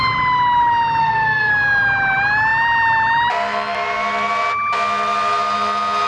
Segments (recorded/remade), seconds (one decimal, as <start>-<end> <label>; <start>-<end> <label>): 0.0-1.0 recorded; 1.0-1.5 remade; 1.5-6.1 recorded